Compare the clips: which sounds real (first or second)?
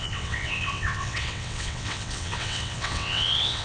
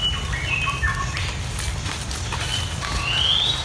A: second